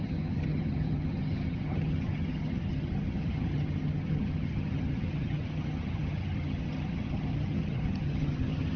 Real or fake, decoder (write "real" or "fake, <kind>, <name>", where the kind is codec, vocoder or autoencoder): fake, vocoder, HiFi-GAN